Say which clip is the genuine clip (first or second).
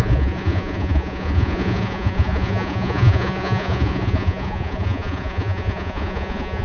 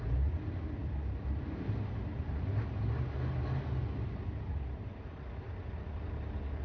second